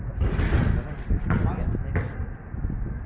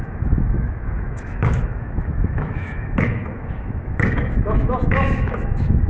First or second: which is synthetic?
second